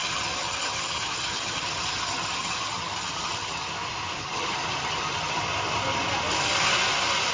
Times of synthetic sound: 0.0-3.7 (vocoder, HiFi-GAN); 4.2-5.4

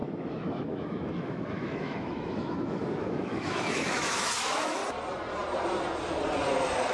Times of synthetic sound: 0.0-4.8 (autoencoder, DAC-VAE)

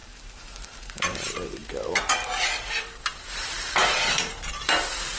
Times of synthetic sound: 0.0-5.2 (vocoder, BigVGAN v2)

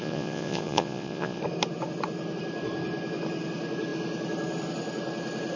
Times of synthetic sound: 0.0-1.4 (vocoder, Vocos)

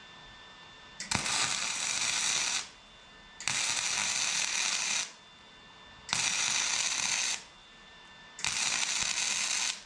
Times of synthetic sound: 0.0-2.4 (vocoder, BigVGAN v2); 7.6-9.0

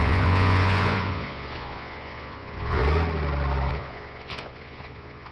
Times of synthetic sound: 0.0-2.8 (vocoder, Vocos); 3.7-5.3

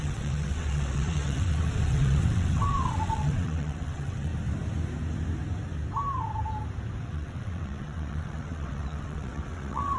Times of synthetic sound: 0.0-4.3 (vocoder, WaveNeXt); 7.0-10.0